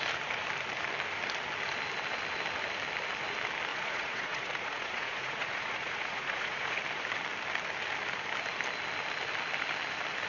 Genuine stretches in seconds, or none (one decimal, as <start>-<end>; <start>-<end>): 0.0-3.7; 6.8-10.3